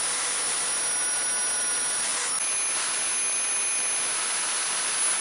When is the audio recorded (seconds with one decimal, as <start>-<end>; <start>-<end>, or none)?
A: 0.0-5.2